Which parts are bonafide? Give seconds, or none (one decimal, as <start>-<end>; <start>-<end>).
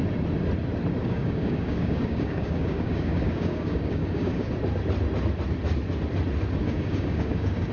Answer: 0.0-1.0; 4.5-6.6